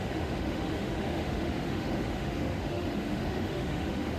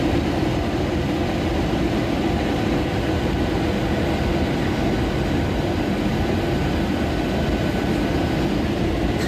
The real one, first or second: second